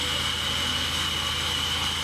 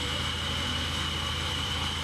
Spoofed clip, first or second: second